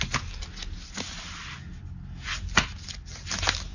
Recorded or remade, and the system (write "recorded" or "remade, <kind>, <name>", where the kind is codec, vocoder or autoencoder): recorded